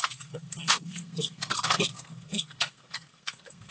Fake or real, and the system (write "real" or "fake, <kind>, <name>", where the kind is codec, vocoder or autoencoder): fake, codec, SNAC